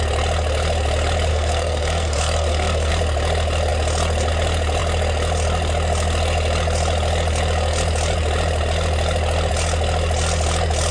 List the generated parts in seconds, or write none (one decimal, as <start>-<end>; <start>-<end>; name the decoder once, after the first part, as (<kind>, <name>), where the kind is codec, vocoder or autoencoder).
1.3-2.9 (codec, SNAC)